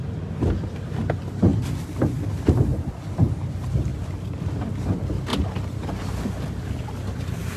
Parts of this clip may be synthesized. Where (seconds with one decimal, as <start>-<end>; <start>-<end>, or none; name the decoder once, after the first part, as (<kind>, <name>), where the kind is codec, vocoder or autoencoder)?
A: none